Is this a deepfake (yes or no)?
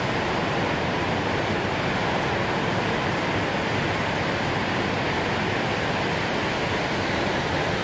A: no